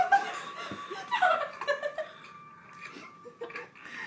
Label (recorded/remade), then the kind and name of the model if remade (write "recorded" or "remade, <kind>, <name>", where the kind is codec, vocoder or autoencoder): recorded